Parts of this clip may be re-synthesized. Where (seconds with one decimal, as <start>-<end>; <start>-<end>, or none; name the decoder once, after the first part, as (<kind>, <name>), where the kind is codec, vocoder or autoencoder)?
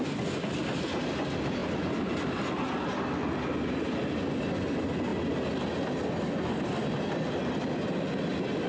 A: none